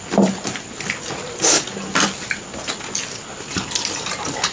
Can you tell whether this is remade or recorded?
recorded